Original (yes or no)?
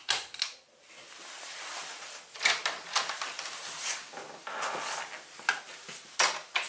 yes